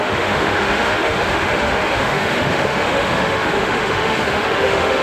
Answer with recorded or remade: remade